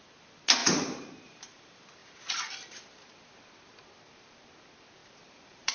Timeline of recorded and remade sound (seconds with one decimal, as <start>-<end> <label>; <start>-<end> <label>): 0.0-0.6 recorded; 0.6-1.6 remade; 1.6-2.0 recorded; 2.0-2.5 remade; 2.5-5.0 recorded; 5.0-5.7 remade